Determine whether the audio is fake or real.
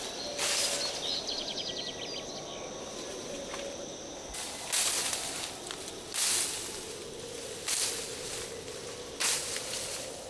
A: real